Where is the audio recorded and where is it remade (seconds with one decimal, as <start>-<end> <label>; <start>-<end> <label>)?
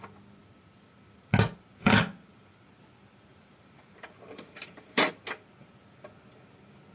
0.0-3.3 recorded; 3.3-5.1 remade; 5.1-6.9 recorded